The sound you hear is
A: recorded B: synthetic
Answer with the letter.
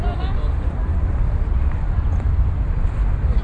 A